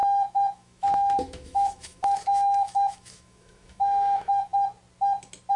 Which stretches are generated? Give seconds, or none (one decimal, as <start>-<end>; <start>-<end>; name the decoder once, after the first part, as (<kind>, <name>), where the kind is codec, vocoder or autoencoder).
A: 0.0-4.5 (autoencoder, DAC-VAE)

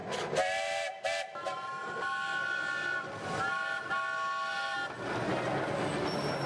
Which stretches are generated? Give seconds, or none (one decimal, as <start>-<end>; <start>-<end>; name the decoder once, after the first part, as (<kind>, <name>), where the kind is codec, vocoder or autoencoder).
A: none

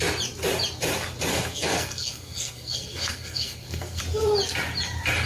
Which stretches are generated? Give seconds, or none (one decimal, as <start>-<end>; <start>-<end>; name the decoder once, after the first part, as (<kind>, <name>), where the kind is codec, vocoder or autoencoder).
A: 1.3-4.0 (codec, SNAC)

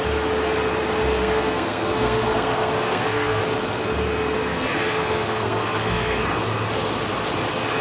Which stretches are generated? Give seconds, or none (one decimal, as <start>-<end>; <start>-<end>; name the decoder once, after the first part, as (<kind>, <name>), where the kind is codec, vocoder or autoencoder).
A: 1.2-3.4 (codec, SNAC); 4.4-6.2

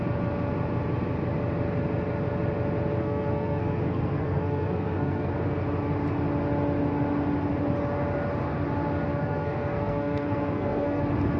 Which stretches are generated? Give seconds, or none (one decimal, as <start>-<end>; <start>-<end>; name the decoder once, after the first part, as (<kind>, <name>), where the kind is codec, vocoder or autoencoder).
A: 3.0-5.3 (codec, SNAC); 9.1-11.0

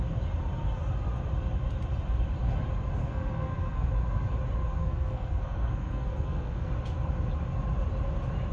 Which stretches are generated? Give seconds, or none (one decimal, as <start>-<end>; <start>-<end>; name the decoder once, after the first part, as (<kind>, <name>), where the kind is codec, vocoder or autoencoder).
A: 3.0-3.9 (codec, SNAC); 4.7-6.7